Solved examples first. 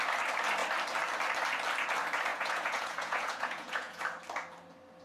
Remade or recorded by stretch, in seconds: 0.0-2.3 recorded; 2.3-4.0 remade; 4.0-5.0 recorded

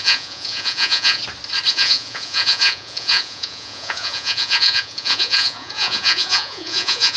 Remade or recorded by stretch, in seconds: 0.0-1.2 remade; 1.2-1.7 recorded; 1.7-7.2 remade

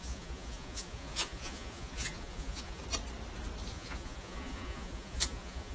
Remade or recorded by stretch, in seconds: 0.0-2.8 remade; 2.8-3.7 recorded; 3.7-5.7 remade

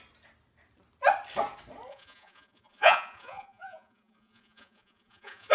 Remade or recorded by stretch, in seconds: 0.0-1.9 recorded; 1.9-5.5 remade

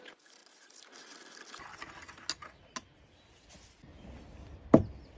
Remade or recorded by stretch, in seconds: 0.0-5.2 recorded

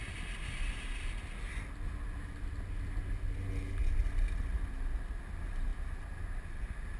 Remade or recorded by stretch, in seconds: 0.0-7.0 recorded

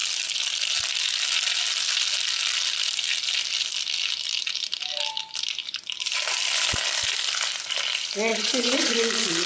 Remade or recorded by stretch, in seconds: 0.0-8.3 recorded; 8.3-8.9 remade; 8.9-9.5 recorded

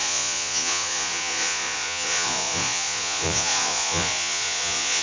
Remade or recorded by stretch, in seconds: 0.0-5.0 remade